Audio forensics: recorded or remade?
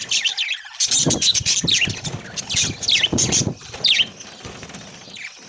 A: recorded